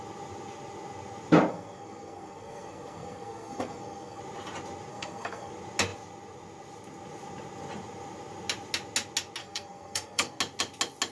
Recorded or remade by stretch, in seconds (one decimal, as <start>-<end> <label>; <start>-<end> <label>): 0.0-1.5 recorded; 1.5-4.2 remade; 4.2-4.9 recorded; 4.9-5.5 remade; 5.5-9.4 recorded; 9.4-10.4 remade; 10.4-11.1 recorded